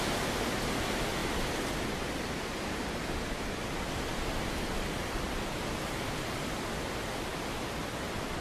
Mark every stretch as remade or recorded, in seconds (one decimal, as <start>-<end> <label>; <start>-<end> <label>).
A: 0.0-7.3 recorded; 7.3-8.4 remade

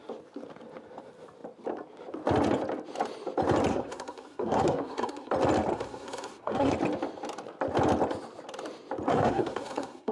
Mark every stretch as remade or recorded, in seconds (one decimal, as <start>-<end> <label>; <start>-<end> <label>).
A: 0.0-3.7 recorded; 3.7-5.3 remade; 5.3-5.7 recorded; 5.7-6.7 remade; 6.7-9.1 recorded; 9.1-10.1 remade